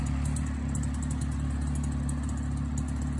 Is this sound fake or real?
real